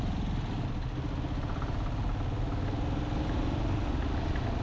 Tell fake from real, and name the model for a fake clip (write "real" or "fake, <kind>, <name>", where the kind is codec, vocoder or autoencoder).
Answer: real